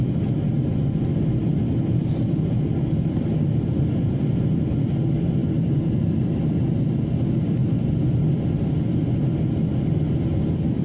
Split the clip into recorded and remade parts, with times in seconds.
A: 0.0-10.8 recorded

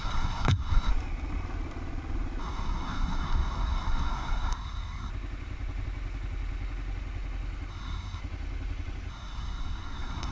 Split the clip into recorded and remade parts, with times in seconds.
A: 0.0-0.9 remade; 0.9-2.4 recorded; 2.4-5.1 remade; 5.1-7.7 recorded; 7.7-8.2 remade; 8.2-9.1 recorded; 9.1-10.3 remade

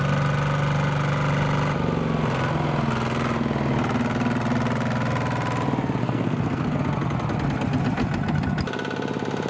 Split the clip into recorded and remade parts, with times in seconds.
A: 0.0-6.0 recorded; 6.0-6.8 remade; 6.8-9.5 recorded